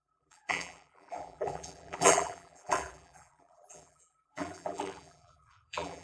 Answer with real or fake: fake